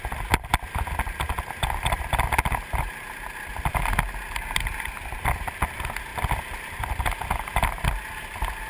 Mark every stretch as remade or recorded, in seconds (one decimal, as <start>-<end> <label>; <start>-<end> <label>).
0.0-8.7 recorded